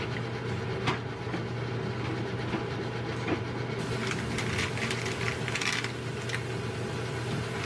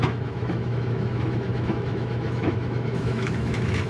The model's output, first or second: second